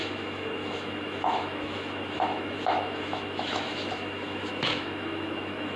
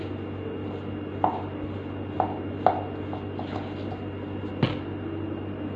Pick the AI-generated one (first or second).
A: first